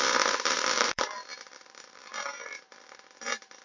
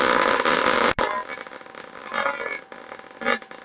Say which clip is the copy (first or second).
first